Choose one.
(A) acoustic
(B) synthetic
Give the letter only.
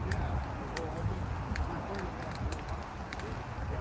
A